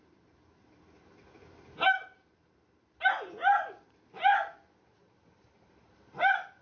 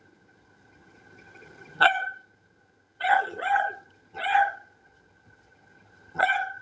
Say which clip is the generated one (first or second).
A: second